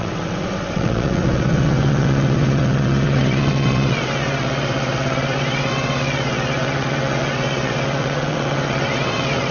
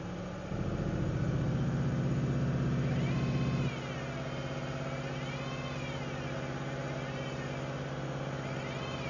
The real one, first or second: second